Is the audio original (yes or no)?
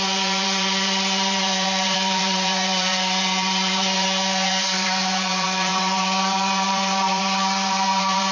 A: no